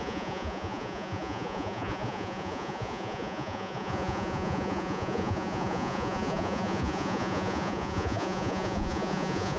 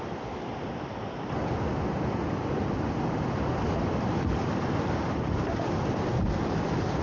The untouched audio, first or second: second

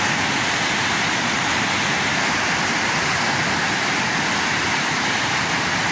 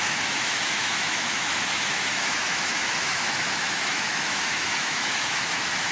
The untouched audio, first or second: first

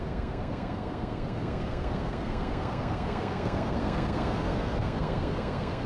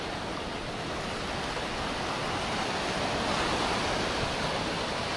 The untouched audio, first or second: second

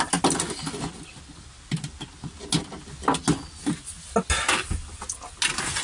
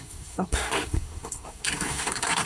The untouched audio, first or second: first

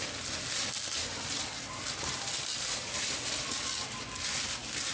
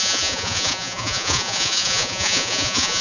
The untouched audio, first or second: first